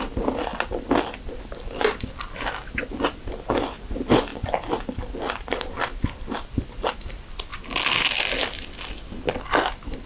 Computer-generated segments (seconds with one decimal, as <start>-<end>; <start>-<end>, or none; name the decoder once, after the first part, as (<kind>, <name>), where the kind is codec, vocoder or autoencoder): none